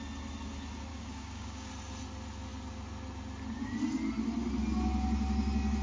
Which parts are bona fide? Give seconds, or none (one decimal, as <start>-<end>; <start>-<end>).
0.0-0.9; 1.7-5.8